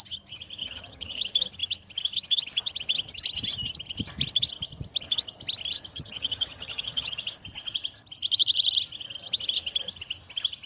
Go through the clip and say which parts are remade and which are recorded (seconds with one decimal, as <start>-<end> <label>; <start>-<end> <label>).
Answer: 0.0-0.6 recorded; 0.6-1.2 remade; 1.2-5.9 recorded; 5.9-7.2 remade; 7.2-10.7 recorded